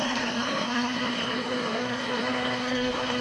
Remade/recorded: remade